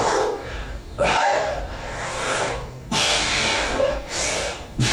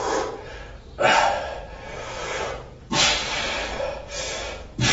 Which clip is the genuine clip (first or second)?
second